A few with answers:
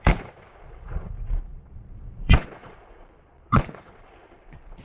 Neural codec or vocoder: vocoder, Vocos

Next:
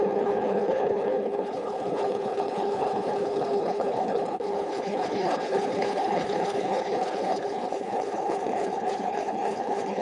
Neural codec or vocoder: codec, HILCodec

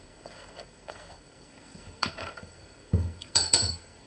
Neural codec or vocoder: codec, SNAC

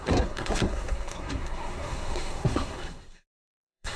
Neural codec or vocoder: codec, SNAC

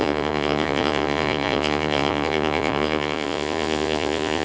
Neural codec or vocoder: vocoder, Vocos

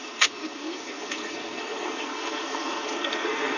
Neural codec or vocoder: codec, SNAC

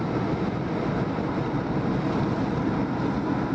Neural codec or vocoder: none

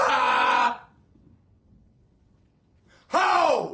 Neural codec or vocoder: vocoder, WaveNeXt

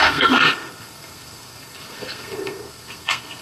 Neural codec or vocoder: codec, SNAC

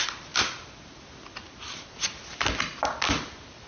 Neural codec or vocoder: none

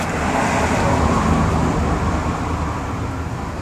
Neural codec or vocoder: none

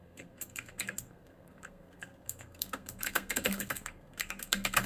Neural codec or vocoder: codec, SNAC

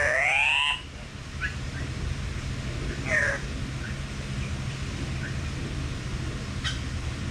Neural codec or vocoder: none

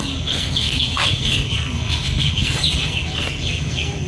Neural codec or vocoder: codec, SNAC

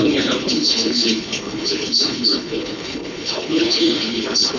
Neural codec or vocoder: codec, HILCodec